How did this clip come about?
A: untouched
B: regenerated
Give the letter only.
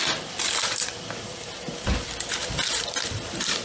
B